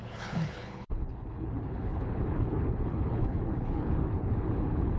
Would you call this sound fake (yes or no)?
yes